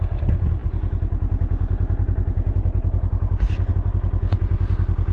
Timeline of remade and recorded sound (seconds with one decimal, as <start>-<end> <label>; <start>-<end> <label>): 0.0-5.1 recorded